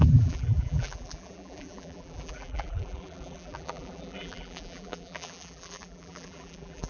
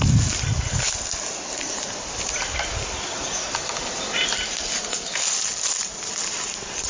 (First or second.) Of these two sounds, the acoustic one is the second